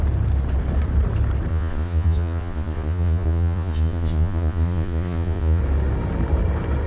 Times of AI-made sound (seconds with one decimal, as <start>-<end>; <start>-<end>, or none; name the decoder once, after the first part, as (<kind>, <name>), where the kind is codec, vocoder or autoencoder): 1.5-5.6 (vocoder, Vocos)